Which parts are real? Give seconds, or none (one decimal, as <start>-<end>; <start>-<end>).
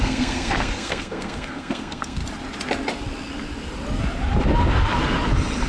2.2-5.7